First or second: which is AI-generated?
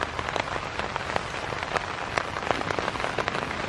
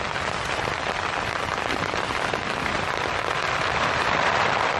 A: second